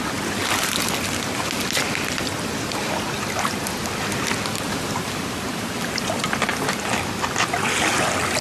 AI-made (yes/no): no